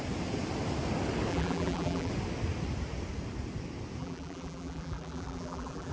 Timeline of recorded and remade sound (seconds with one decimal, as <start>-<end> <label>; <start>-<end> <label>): 0.0-1.3 recorded; 1.3-2.1 remade; 2.1-4.0 recorded; 4.0-5.9 remade